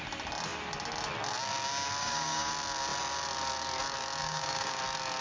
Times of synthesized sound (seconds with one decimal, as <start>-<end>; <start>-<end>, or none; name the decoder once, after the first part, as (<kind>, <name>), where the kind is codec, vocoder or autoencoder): 2.0-2.5 (codec, DAC); 4.2-4.8